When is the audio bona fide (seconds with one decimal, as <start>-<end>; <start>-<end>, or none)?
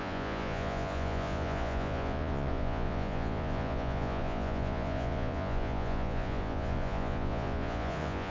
none